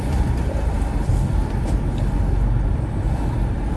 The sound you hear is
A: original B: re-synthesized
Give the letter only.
B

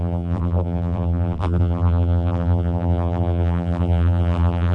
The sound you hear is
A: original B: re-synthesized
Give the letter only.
B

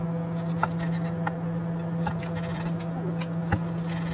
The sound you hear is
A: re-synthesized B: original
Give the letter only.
B